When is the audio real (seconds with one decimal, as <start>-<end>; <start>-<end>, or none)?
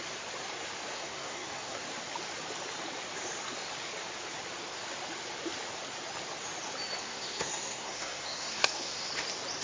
0.0-0.9; 1.8-7.0; 9.1-9.6